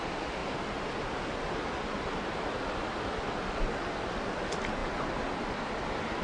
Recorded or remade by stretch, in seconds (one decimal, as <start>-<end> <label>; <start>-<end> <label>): 0.0-6.2 recorded